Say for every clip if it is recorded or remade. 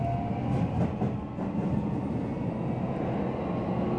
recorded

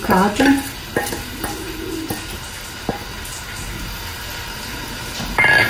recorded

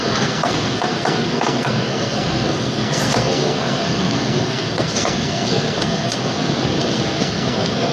remade